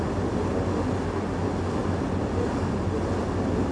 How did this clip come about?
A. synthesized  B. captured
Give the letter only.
B